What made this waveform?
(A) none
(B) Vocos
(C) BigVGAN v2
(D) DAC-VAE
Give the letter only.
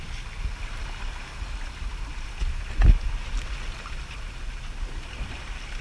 A